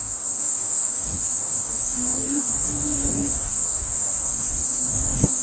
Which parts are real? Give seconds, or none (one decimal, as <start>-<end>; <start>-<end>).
none